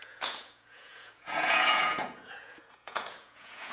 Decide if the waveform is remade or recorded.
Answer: remade